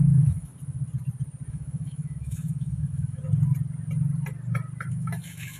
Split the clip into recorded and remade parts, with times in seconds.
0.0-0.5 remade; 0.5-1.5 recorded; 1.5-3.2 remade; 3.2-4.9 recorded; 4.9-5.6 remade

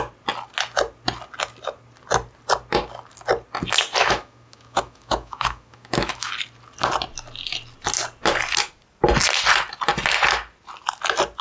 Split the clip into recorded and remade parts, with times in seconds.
0.0-4.0 recorded; 4.0-6.3 remade; 6.3-11.4 recorded

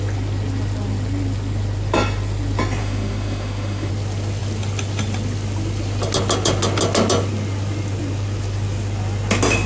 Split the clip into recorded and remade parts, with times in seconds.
0.0-2.8 recorded; 2.8-3.9 remade; 3.9-9.7 recorded

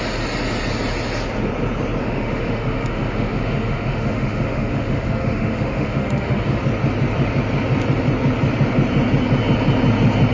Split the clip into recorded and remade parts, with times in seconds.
0.0-2.0 recorded; 2.0-6.6 remade; 6.6-10.3 recorded

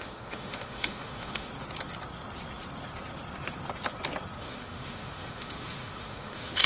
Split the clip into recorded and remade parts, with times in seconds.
0.0-1.5 remade; 1.5-4.4 recorded; 4.4-6.7 remade

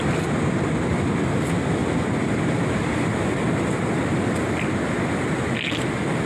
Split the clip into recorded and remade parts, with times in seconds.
0.0-6.3 recorded

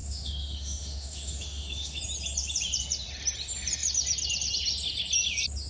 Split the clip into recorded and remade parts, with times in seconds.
0.0-2.0 remade; 2.0-5.7 recorded

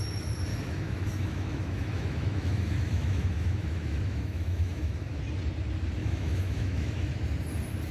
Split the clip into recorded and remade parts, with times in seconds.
0.0-0.5 recorded; 0.5-5.2 remade; 5.2-6.0 recorded; 6.0-7.1 remade; 7.1-7.9 recorded